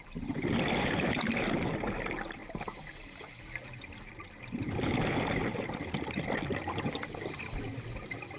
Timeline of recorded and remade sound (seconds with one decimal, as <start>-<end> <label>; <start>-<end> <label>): 0.0-8.4 recorded

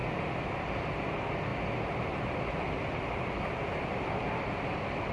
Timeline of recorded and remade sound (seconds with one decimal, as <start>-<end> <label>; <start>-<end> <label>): 0.0-5.1 recorded